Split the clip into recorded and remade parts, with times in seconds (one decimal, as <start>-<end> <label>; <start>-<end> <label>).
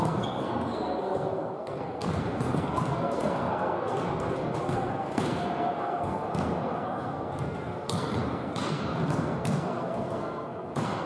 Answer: 0.0-11.1 remade